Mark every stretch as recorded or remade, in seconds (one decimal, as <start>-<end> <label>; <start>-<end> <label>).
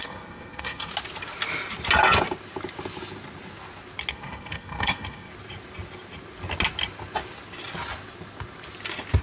0.0-0.9 remade; 0.9-4.1 recorded; 4.1-5.3 remade; 5.3-9.2 recorded